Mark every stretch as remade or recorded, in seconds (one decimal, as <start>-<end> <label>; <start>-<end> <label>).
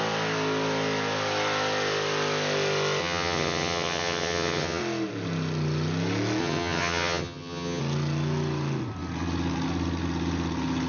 0.0-3.0 recorded; 3.0-4.8 remade; 4.8-6.4 recorded; 6.4-7.8 remade; 7.8-10.9 recorded